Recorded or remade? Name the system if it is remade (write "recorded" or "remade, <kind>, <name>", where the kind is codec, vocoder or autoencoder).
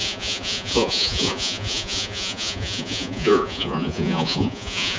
remade, vocoder, Vocos